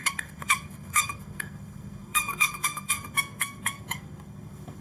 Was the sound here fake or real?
fake